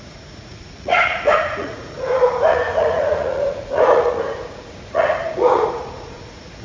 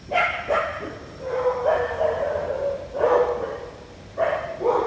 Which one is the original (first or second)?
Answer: second